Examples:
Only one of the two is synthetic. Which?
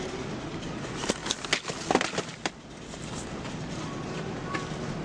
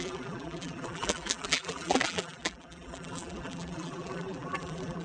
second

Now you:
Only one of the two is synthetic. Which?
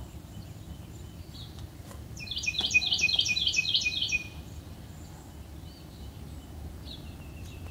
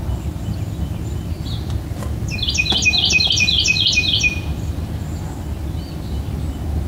first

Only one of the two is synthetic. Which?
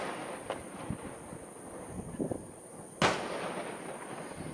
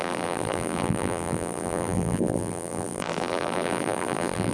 second